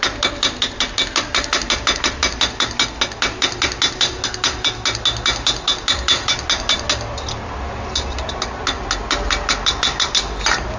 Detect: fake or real real